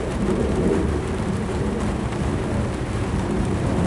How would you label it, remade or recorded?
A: remade